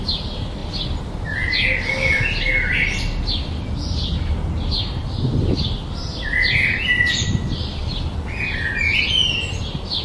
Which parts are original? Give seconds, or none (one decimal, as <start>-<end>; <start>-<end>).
0.0-10.0